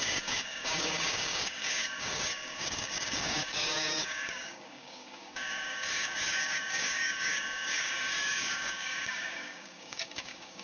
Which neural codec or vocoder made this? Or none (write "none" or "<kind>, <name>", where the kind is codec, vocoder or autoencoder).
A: codec, DAC